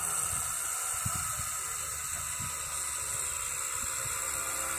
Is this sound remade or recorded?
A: recorded